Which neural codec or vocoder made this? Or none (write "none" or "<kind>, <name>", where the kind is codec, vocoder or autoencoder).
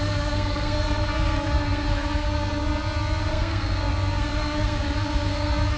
codec, SNAC